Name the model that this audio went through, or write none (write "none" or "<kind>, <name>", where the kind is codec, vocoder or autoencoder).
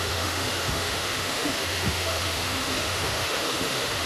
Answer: autoencoder, DAC-VAE